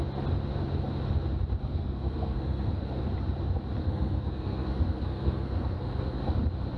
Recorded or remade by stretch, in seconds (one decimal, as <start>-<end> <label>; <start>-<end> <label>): 0.0-1.6 recorded; 1.6-3.0 remade; 3.0-3.8 recorded; 3.8-6.2 remade; 6.2-6.8 recorded